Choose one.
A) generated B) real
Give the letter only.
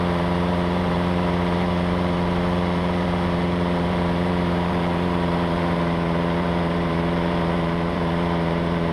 A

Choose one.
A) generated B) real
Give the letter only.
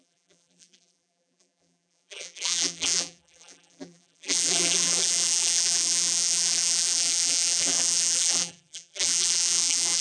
A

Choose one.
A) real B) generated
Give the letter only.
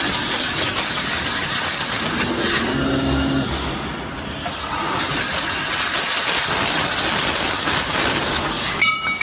A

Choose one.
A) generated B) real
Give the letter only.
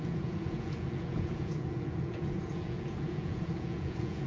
A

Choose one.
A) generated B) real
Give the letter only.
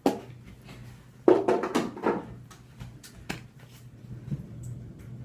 B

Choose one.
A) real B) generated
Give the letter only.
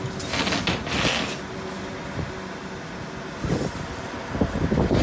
A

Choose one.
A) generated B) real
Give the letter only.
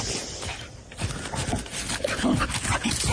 B